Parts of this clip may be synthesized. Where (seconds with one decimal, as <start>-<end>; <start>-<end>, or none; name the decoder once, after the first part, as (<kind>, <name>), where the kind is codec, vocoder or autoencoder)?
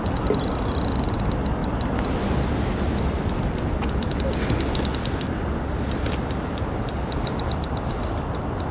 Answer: none